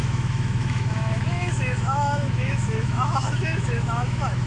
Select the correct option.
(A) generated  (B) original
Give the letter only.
A